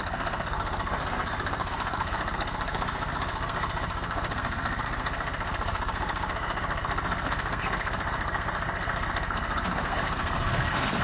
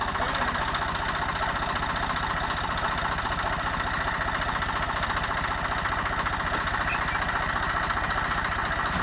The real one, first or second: second